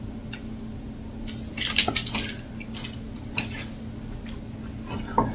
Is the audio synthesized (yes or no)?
no